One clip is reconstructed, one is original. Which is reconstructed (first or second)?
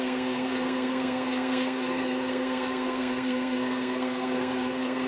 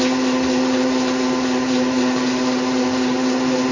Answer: first